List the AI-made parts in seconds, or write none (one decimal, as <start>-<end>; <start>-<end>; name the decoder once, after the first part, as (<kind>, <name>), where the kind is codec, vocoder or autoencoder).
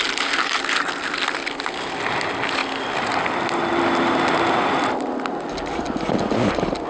none